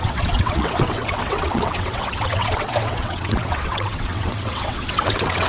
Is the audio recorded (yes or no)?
no